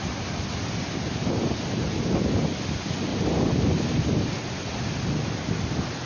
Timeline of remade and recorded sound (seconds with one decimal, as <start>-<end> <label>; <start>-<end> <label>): 0.0-6.1 recorded